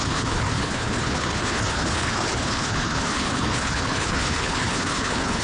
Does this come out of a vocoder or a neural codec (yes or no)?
yes